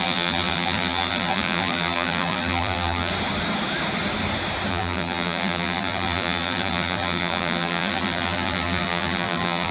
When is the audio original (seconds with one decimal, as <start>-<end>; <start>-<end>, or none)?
3.1-4.7